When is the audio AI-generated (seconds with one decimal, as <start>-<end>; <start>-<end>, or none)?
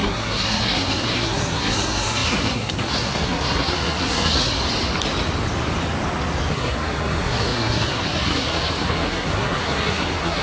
0.0-4.6; 6.5-10.4